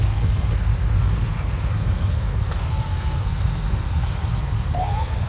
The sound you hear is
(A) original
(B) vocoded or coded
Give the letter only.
B